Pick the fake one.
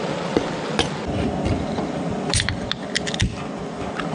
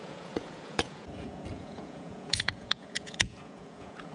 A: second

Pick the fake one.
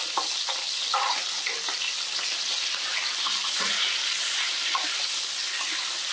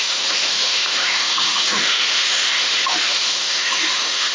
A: second